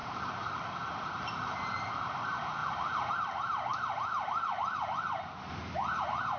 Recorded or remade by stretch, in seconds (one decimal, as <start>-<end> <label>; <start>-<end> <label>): 0.0-2.0 remade; 2.0-2.6 recorded; 2.6-3.1 remade; 3.1-3.7 recorded; 3.7-6.4 remade